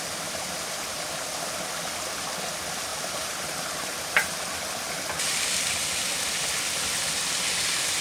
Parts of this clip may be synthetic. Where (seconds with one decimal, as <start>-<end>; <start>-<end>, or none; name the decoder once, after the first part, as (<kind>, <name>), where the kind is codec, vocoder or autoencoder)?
2.9-4.5 (vocoder, BigVGAN v2)